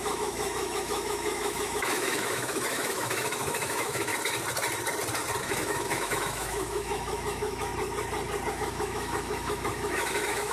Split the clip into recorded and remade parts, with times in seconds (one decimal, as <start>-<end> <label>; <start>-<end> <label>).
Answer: 0.0-4.1 remade; 4.1-5.4 recorded; 5.4-7.7 remade; 7.7-8.5 recorded; 8.5-10.5 remade